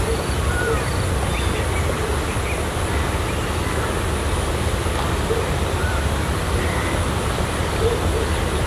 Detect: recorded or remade recorded